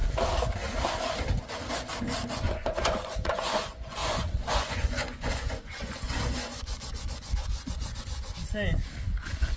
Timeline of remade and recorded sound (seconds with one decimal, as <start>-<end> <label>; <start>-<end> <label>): 0.0-2.3 recorded; 2.3-8.7 remade; 8.7-9.2 recorded; 9.2-9.6 remade